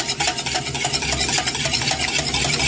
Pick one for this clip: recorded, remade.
recorded